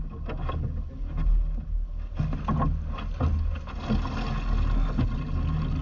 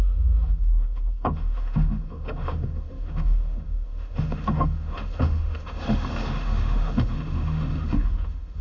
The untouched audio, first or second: first